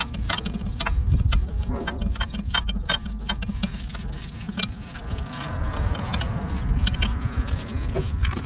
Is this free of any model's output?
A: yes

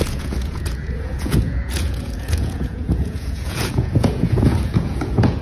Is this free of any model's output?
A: no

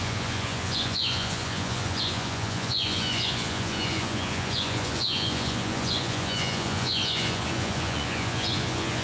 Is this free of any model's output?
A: no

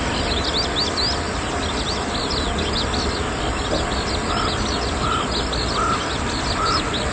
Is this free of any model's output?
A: yes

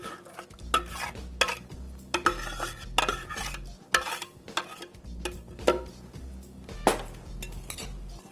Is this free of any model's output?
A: yes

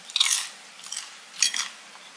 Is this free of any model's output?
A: yes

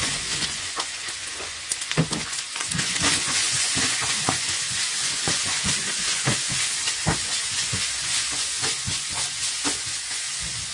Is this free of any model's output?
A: no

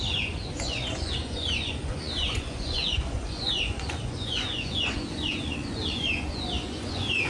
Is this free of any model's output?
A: no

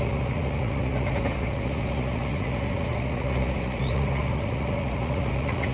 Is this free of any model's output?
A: no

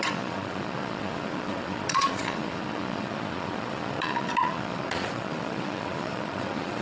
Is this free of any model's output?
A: no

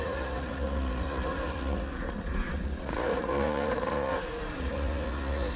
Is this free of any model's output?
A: no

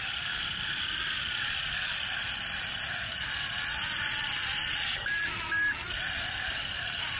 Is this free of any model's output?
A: yes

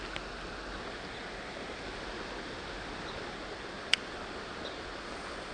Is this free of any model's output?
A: yes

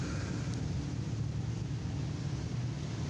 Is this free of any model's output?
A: yes